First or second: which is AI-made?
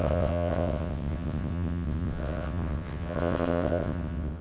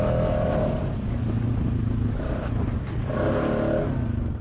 first